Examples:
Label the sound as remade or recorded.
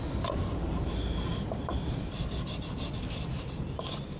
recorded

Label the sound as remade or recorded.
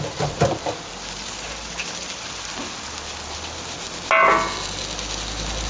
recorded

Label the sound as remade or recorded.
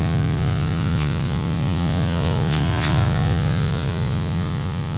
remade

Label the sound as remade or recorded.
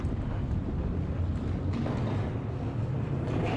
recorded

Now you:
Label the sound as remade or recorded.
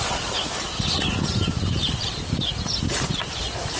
recorded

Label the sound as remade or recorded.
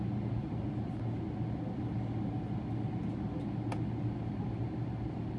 recorded